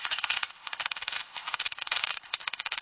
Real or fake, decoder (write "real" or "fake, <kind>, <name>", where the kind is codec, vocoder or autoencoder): fake, codec, ZipCodec